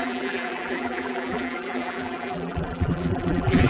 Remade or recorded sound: remade